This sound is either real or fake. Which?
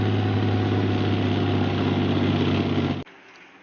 real